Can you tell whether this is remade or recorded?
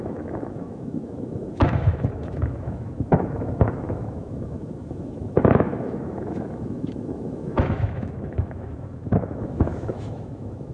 remade